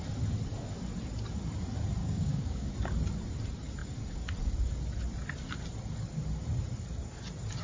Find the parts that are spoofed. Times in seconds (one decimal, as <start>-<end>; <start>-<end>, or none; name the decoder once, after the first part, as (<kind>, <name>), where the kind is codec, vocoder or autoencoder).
2.0-2.7 (codec, DAC)